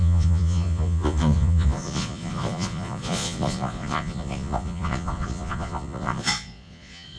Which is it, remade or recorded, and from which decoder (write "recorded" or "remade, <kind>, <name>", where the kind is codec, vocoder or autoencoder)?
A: remade, vocoder, Vocos